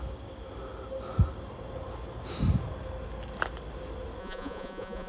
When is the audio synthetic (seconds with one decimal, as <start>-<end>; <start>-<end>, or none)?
4.2-5.1